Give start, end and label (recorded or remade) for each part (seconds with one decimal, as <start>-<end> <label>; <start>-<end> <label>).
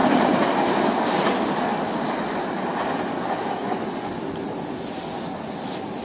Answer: 0.0-3.6 recorded; 3.6-4.1 remade; 4.1-6.0 recorded